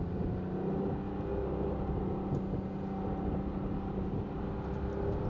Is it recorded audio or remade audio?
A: recorded